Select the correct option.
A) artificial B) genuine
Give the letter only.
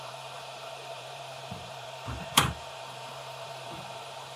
A